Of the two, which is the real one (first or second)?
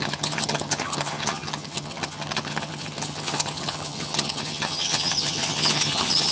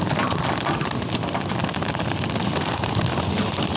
second